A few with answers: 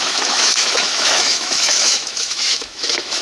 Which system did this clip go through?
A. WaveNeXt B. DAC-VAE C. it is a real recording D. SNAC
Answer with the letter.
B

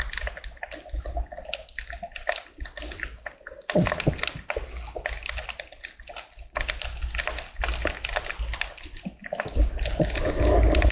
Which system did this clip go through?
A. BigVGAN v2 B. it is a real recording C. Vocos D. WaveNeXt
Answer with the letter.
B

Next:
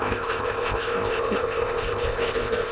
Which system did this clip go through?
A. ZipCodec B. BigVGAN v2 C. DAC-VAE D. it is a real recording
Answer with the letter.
A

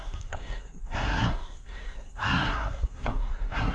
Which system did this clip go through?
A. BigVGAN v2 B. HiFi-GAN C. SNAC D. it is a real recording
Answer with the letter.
C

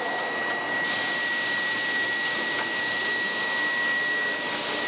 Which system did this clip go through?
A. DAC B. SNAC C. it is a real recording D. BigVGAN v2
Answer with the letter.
C